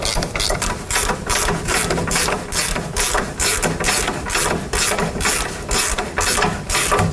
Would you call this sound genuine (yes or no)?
yes